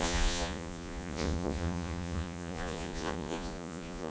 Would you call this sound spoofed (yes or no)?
yes